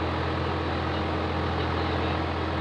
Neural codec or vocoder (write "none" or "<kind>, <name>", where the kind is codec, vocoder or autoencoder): none